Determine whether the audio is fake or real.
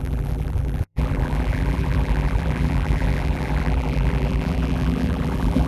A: fake